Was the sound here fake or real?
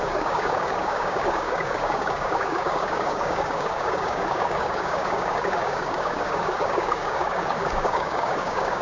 fake